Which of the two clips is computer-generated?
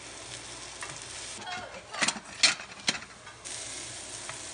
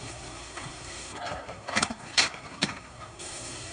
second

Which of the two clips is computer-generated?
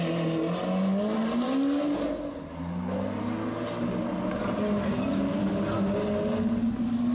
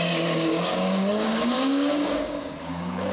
second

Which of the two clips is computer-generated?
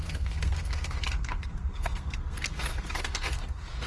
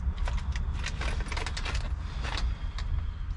first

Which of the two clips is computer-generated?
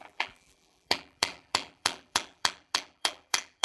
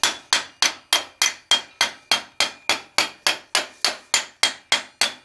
first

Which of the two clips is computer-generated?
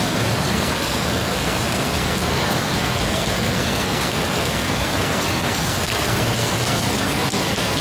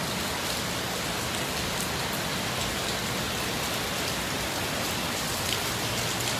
first